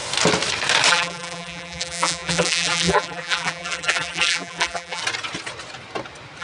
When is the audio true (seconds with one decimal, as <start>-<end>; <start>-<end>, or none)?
0.0-0.9; 5.0-6.4